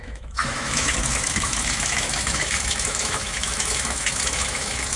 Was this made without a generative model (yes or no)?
no